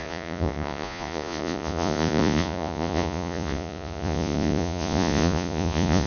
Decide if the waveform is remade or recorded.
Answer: remade